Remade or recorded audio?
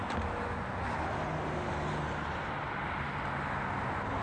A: recorded